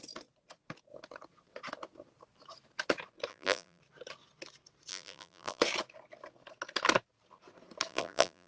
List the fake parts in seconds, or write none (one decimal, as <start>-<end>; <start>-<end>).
3.3-3.8; 4.9-5.6; 7.9-8.5